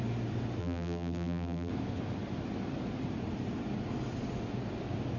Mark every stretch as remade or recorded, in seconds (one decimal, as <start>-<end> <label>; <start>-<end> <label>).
0.0-0.6 recorded; 0.6-1.7 remade; 1.7-5.2 recorded

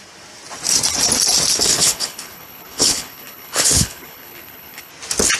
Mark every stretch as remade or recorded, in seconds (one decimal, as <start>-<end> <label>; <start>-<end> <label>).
0.0-1.7 recorded; 1.7-4.9 remade; 4.9-5.4 recorded

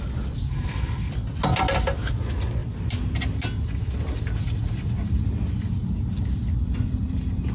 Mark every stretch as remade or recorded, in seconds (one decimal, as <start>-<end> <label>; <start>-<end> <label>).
0.0-0.5 recorded; 0.5-1.1 remade; 1.1-7.5 recorded

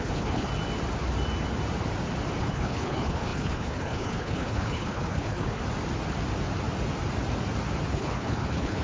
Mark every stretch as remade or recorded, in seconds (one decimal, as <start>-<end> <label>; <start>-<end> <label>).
0.0-0.5 remade; 0.5-2.4 recorded; 2.4-5.6 remade; 5.6-7.9 recorded; 7.9-8.8 remade